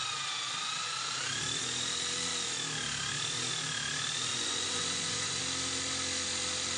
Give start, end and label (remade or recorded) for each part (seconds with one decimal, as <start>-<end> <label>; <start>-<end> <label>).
0.0-4.3 recorded; 4.3-5.4 remade; 5.4-6.8 recorded